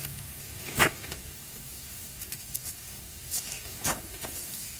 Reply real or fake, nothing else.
fake